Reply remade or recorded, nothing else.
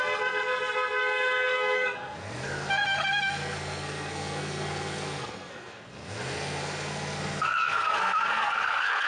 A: remade